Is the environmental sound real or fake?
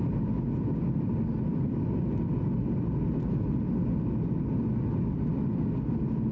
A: real